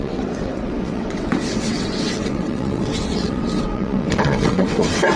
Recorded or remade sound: remade